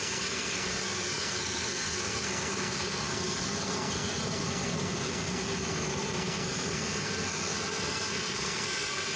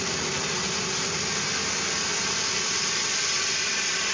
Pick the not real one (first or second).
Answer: first